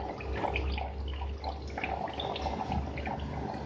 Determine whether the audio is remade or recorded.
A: recorded